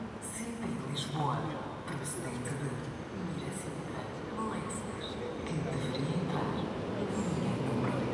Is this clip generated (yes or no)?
no